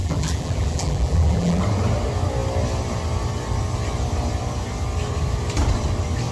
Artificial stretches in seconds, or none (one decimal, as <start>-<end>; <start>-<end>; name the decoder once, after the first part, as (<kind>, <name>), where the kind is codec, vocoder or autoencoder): 0.0-1.6 (vocoder, BigVGAN v2)